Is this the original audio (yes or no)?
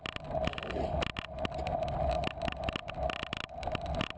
yes